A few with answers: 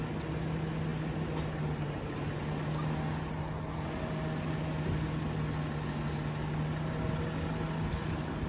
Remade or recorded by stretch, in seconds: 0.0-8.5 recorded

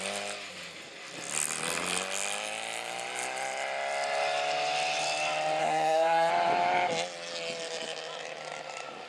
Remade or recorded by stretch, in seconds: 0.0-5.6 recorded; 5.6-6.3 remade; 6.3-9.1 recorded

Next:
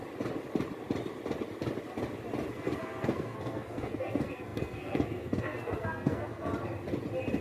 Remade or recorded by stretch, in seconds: 0.0-2.5 recorded; 2.5-6.5 remade; 6.5-7.4 recorded

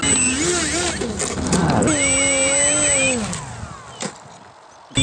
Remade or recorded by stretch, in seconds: 0.0-5.0 recorded